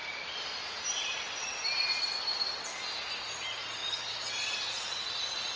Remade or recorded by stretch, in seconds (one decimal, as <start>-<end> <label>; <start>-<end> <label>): 0.0-5.6 recorded